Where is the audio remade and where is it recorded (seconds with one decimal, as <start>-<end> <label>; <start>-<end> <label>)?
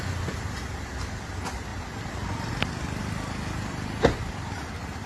0.0-5.1 recorded